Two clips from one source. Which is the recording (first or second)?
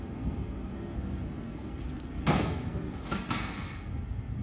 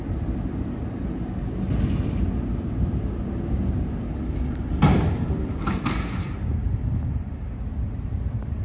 second